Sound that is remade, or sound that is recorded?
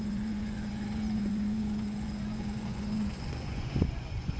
remade